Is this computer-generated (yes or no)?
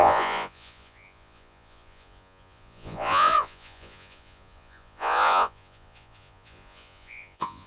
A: yes